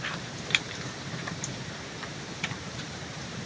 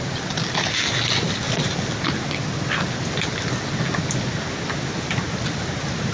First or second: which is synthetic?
first